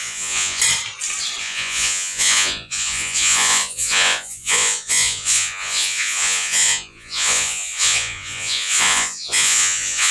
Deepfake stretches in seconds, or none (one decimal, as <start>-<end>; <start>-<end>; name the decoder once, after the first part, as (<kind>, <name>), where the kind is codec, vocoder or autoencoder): 0.0-0.6 (vocoder, Vocos); 1.4-10.1